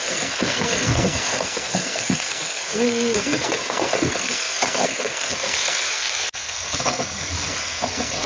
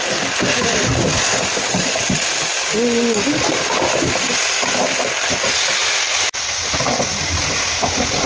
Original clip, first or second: second